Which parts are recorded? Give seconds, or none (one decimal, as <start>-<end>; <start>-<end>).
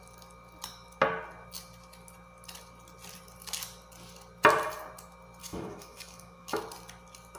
0.0-5.4; 6.6-7.4